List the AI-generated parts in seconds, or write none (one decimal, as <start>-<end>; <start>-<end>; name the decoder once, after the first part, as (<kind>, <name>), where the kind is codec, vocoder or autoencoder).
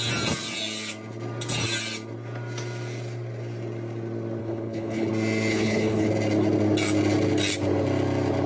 4.4-5.1 (codec, HILCodec); 5.5-6.1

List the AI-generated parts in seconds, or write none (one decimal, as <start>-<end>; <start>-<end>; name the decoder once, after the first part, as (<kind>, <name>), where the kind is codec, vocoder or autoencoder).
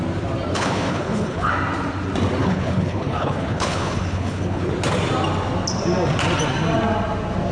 0.5-1.5 (codec, HILCodec); 2.4-4.7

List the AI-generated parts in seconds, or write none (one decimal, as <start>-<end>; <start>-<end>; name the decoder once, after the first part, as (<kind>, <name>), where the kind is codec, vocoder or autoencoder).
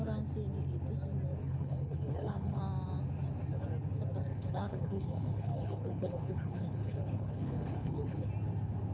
1.4-2.6 (codec, HILCodec); 4.3-8.3